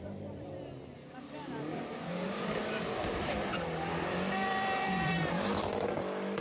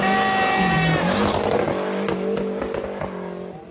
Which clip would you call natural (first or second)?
second